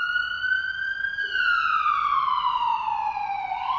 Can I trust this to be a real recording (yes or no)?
yes